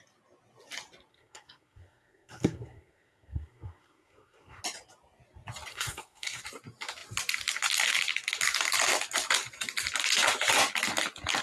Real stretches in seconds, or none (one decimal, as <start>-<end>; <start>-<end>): 0.0-1.1; 4.6-5.7; 6.4-11.4